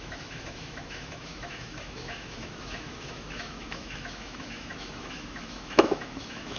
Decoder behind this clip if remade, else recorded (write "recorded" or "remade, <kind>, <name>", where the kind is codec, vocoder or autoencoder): remade, autoencoder, DAC-VAE